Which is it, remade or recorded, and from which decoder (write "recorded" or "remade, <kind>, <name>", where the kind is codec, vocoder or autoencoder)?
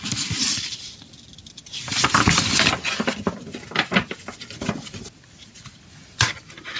recorded